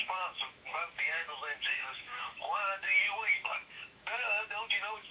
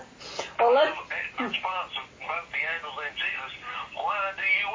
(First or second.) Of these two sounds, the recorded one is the second